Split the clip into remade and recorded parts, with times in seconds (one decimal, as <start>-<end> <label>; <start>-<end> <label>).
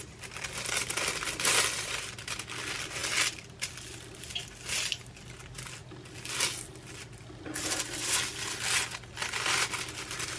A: 0.0-10.4 recorded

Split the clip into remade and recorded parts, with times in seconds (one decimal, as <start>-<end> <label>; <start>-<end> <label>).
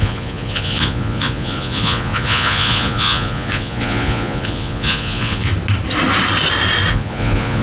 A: 0.0-5.5 remade; 5.5-6.9 recorded; 6.9-7.6 remade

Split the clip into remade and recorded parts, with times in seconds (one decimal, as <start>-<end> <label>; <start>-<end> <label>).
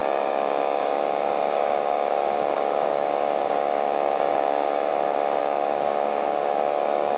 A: 0.0-4.9 remade; 4.9-5.4 recorded; 5.4-7.2 remade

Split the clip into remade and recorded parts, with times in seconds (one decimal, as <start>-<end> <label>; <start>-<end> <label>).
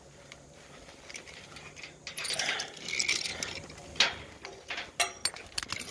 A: 0.0-5.9 recorded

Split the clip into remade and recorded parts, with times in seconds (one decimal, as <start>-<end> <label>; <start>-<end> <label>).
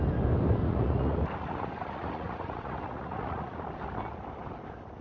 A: 0.0-0.6 recorded; 0.6-3.6 remade; 3.6-5.0 recorded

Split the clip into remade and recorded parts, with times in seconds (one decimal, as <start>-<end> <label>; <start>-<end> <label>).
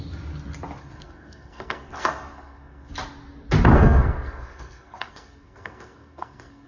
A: 0.0-0.8 recorded; 0.8-2.9 remade; 2.9-3.7 recorded; 3.7-6.7 remade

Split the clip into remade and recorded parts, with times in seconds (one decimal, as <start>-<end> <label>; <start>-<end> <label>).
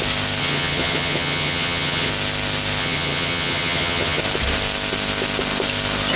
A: 0.0-0.4 recorded; 0.4-2.1 remade; 2.1-2.8 recorded; 2.8-4.2 remade; 4.2-6.2 recorded